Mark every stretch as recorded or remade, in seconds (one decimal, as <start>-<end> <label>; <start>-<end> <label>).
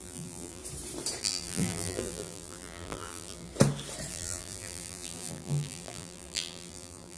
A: 0.0-0.6 remade; 0.6-1.2 recorded; 1.2-3.5 remade; 3.5-4.1 recorded; 4.1-7.2 remade